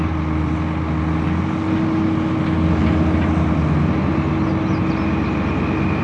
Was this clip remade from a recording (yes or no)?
no